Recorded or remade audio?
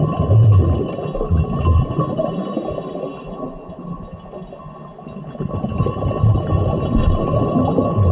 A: recorded